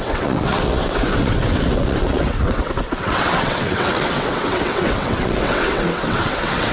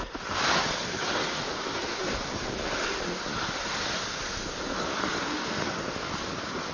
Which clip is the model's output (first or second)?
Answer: first